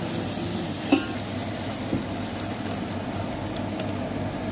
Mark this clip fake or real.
real